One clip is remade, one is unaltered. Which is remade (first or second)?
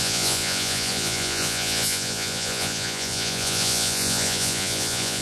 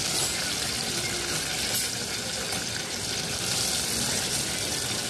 first